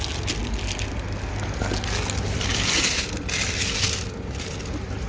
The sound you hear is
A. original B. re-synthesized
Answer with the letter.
A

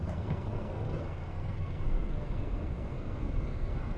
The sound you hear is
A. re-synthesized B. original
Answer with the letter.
A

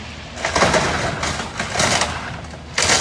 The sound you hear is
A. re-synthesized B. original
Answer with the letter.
B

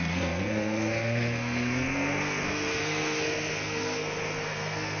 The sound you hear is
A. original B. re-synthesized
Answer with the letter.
B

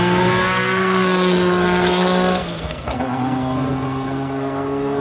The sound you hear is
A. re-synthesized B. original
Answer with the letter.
A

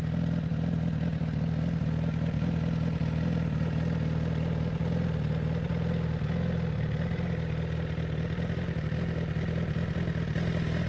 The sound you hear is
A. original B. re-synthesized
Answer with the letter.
A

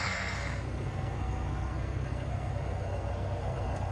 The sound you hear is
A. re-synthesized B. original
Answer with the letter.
A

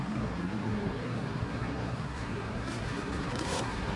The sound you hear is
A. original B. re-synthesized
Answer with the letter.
B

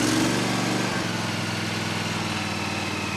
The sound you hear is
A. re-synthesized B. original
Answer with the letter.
B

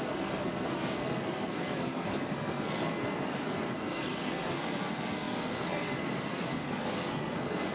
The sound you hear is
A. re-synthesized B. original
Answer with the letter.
A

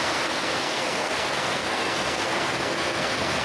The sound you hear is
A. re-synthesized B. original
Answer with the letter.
A